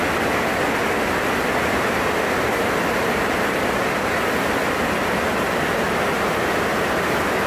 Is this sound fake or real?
real